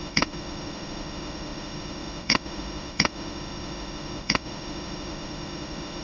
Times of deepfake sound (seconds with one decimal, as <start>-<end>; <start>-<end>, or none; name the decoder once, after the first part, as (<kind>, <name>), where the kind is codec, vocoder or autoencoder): 0.0-6.0 (autoencoder, DAC-VAE)